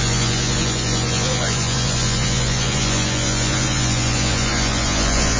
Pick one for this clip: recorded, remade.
remade